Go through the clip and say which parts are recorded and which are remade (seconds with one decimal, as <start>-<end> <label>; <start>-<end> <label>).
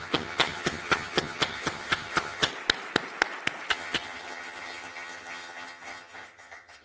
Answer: 0.0-2.5 remade; 2.5-3.7 recorded; 3.7-6.8 remade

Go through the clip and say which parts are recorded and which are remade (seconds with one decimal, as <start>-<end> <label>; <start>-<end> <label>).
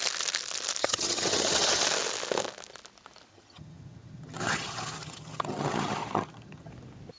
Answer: 0.0-0.8 recorded; 0.8-1.8 remade; 1.8-3.3 recorded; 3.3-6.7 remade; 6.7-7.2 recorded